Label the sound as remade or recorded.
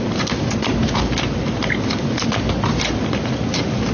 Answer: recorded